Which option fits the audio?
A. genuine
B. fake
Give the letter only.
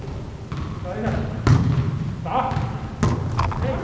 A